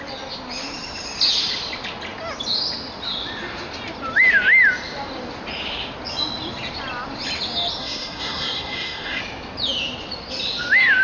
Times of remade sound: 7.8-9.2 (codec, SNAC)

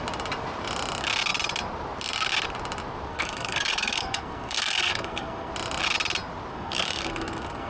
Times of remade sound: 3.1-5.5 (codec, SNAC); 6.5-7.7